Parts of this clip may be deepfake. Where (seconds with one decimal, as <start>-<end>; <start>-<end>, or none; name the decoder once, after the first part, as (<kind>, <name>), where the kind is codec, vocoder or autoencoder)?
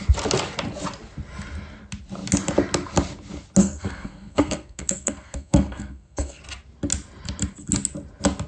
3.6-6.4 (codec, SNAC)